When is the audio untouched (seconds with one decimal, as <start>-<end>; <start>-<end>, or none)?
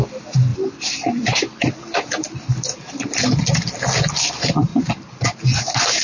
0.0-0.5; 3.1-4.7; 5.6-6.0